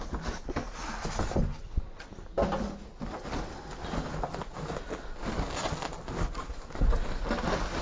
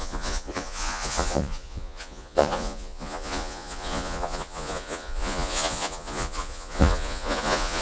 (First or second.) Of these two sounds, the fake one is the second